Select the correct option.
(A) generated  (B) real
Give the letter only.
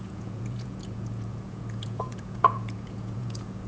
A